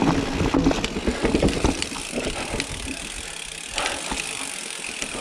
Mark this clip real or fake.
real